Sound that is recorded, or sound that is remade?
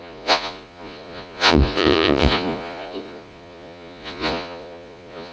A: remade